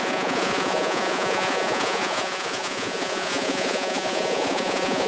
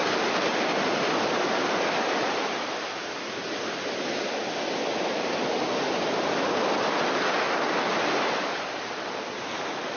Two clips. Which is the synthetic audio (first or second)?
first